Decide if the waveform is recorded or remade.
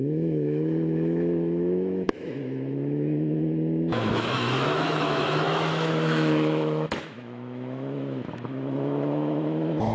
remade